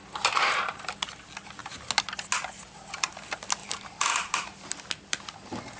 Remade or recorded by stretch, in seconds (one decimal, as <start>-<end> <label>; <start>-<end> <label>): 0.0-1.0 remade; 1.0-3.6 recorded; 3.6-4.8 remade; 4.8-5.8 recorded